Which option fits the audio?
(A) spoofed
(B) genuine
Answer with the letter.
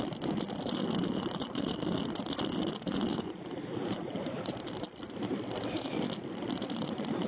B